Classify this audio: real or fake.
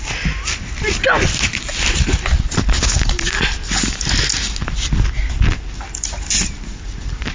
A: real